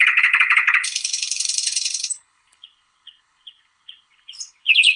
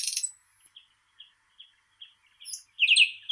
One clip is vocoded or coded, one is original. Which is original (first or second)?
second